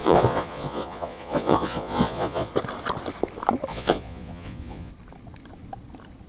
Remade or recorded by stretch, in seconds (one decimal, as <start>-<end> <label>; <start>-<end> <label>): 0.0-2.5 remade; 2.5-3.7 recorded; 3.7-4.9 remade; 4.9-6.3 recorded